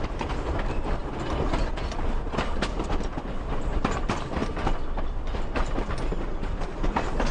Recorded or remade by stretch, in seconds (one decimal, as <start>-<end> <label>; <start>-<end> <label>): 0.0-7.3 recorded